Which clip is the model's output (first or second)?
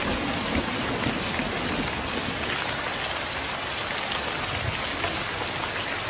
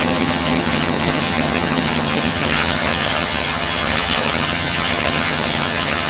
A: second